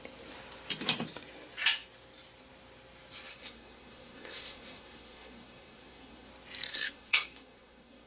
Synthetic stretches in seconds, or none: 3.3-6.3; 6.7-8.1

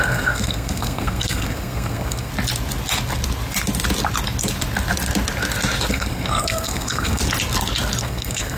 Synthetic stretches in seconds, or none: 0.0-2.3; 5.9-7.2; 8.0-8.6

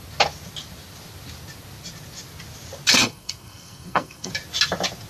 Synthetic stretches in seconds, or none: 3.0-4.3